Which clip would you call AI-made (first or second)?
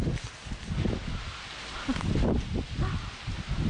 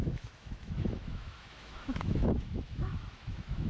second